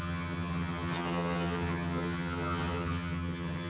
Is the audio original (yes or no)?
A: no